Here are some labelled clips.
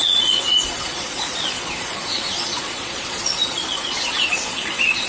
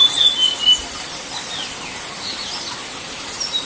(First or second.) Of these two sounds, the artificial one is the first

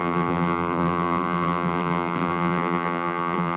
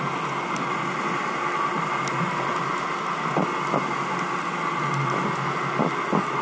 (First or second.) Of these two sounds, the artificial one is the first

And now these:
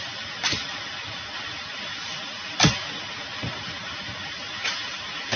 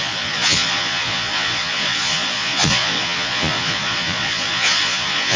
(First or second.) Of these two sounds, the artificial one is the second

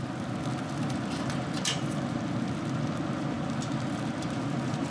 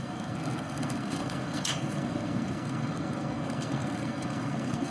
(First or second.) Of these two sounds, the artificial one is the second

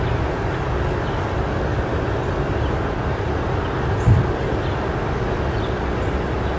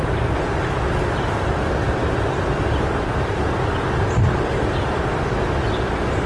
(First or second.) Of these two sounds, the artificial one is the second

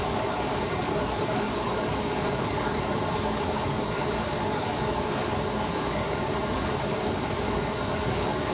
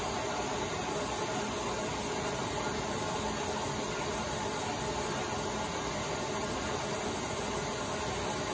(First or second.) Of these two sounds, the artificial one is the first